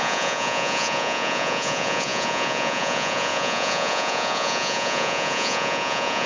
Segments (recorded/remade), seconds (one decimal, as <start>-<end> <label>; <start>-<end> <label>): 0.0-6.3 remade